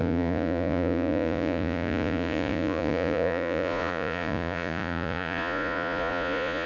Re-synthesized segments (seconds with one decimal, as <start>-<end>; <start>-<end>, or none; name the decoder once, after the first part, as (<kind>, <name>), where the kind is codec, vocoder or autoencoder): 0.0-6.7 (vocoder, Vocos)